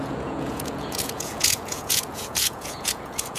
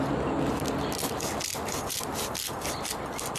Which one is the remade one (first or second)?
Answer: first